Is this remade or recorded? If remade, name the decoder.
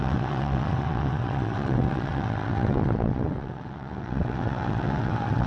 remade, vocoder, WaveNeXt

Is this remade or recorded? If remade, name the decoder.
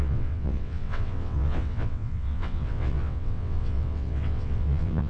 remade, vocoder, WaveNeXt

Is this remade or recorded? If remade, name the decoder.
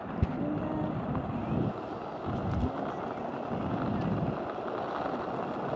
recorded